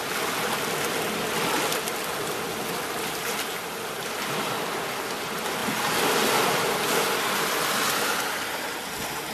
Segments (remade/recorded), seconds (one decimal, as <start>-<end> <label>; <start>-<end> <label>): 0.0-9.3 recorded